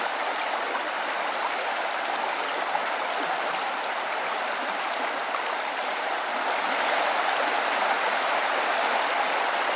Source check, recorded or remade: recorded